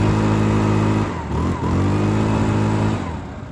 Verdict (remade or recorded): recorded